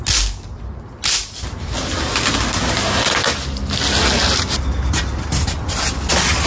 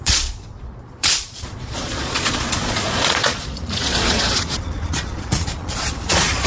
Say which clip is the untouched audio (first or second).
first